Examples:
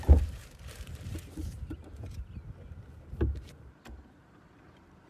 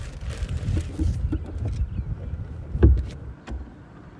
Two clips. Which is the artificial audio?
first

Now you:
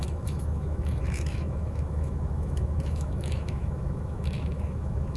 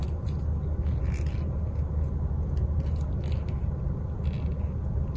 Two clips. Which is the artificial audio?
first